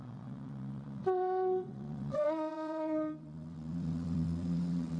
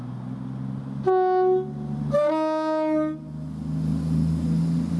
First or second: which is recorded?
second